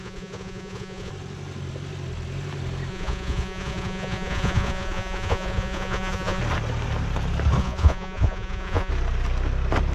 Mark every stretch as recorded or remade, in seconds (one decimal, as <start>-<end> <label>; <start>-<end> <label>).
0.0-1.1 remade; 1.1-2.9 recorded; 2.9-6.4 remade; 6.4-7.6 recorded; 7.6-8.9 remade; 8.9-9.9 recorded